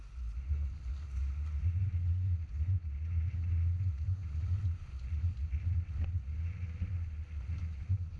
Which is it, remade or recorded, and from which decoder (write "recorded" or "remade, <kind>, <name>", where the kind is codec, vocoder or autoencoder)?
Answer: recorded